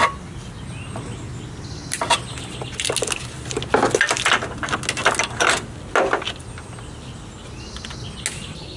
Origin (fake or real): real